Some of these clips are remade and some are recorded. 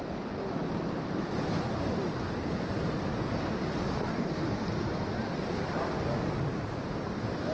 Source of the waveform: recorded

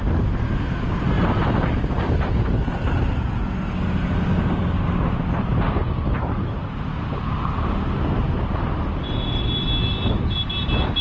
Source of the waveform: recorded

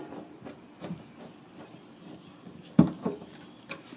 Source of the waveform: recorded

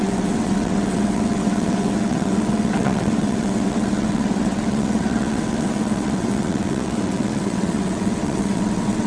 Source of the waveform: remade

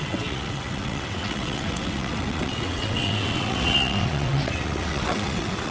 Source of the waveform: remade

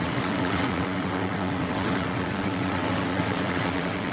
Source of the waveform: remade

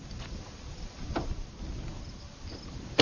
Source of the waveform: recorded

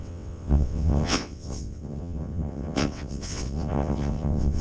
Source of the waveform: remade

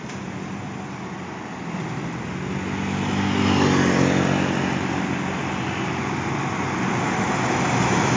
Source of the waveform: recorded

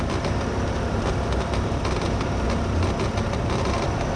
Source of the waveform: recorded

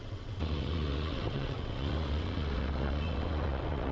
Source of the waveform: remade